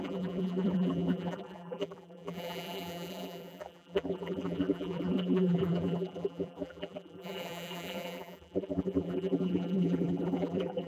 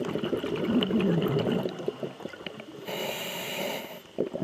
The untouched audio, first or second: second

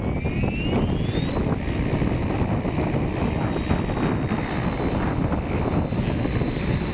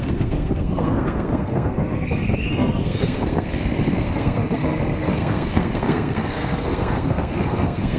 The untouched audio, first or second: first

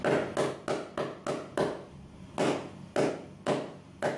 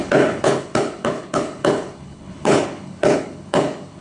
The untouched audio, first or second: first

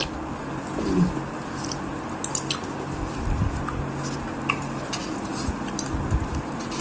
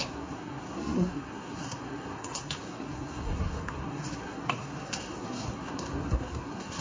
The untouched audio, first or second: first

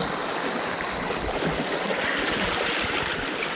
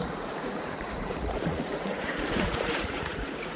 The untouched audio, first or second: first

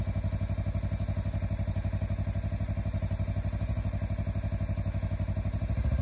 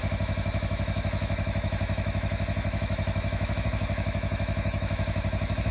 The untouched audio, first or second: first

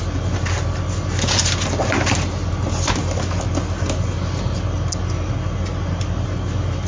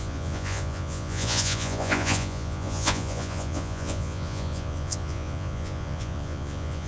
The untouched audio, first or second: first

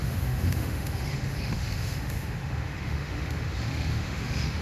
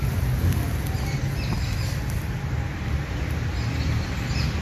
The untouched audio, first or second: second